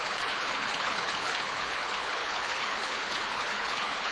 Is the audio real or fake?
fake